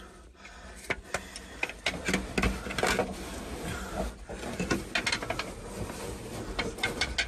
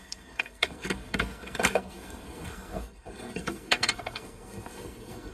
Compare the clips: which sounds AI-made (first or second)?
second